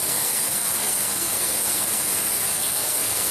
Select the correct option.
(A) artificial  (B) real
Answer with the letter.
A